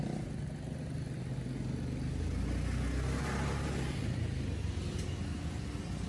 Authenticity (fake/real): real